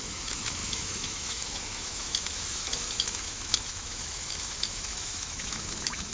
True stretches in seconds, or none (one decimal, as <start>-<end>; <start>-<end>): none